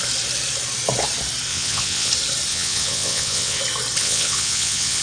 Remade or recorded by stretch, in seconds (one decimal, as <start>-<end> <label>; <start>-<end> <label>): 0.0-1.5 recorded; 1.5-2.1 remade; 2.1-2.5 recorded; 2.5-3.6 remade; 3.6-4.0 recorded; 4.0-5.0 remade